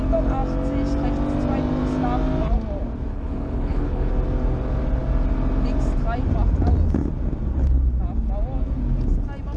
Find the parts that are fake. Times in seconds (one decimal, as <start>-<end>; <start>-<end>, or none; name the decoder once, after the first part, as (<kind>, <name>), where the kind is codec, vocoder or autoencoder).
3.1-4.1 (codec, HILCodec)